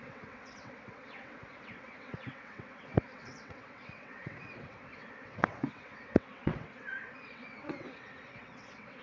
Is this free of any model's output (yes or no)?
no